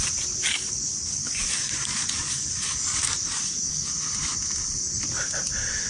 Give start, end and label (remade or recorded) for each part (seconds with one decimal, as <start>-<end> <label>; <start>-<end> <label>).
0.0-0.4 recorded; 0.4-3.9 remade; 3.9-5.9 recorded